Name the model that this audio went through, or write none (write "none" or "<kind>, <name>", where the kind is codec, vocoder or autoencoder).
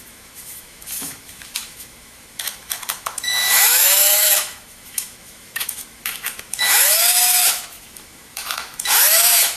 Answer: autoencoder, DAC-VAE